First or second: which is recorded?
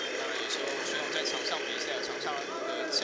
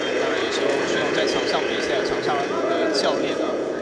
first